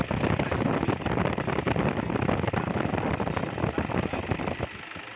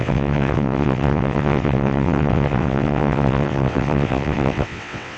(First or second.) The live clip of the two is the first